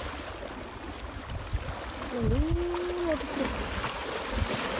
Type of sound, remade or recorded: recorded